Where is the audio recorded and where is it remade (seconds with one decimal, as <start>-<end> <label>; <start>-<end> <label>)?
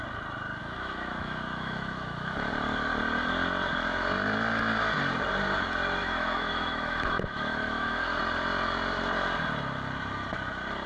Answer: 0.0-0.6 recorded; 0.6-2.5 remade; 2.5-6.0 recorded; 6.0-8.2 remade; 8.2-10.9 recorded